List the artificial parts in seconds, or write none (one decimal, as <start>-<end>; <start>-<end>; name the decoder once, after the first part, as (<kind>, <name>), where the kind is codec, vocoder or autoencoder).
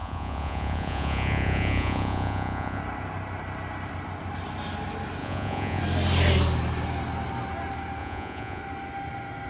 0.0-2.8 (vocoder, Vocos); 5.2-5.8; 8.0-8.6